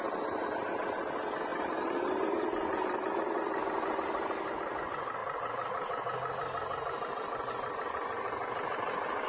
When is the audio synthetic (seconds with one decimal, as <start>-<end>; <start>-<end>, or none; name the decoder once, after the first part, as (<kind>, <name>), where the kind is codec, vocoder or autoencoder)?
none

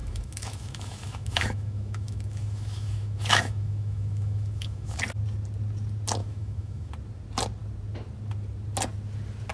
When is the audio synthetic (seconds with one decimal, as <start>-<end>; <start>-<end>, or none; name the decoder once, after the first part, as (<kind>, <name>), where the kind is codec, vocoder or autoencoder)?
0.0-5.0 (autoencoder, DAC-VAE); 6.2-6.9

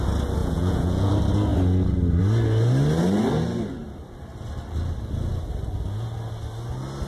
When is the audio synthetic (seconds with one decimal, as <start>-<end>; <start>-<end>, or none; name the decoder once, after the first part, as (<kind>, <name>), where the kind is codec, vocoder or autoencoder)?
0.4-1.1 (vocoder, Vocos)

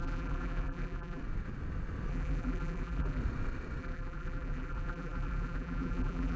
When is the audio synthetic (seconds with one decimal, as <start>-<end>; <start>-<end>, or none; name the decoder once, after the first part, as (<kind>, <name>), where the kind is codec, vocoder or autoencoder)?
0.0-1.2 (vocoder, BigVGAN v2); 2.1-3.2; 3.8-6.4